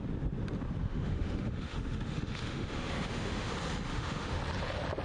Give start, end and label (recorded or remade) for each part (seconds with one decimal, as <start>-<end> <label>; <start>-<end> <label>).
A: 0.0-0.8 recorded; 0.8-3.5 remade; 3.5-3.9 recorded; 3.9-4.4 remade; 4.4-5.0 recorded